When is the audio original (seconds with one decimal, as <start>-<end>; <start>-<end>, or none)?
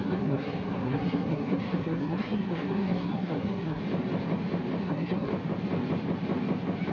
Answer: 3.8-4.8; 5.3-6.9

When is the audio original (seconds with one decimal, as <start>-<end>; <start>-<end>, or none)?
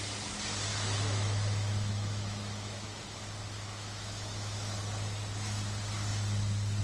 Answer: 0.0-0.7; 4.8-6.8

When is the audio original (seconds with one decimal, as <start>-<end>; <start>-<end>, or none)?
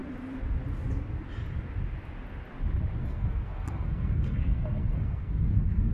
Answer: 0.0-3.0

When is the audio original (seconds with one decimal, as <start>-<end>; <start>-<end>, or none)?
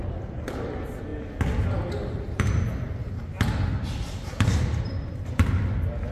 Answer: 0.0-6.1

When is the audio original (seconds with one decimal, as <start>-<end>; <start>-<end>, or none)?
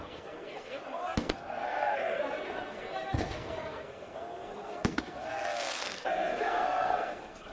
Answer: none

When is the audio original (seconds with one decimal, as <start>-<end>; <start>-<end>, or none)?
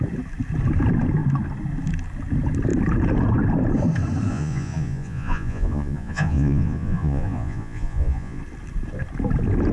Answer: 0.0-4.3; 8.4-9.7